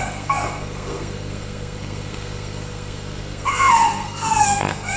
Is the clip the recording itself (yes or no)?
no